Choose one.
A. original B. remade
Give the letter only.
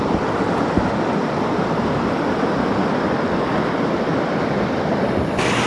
A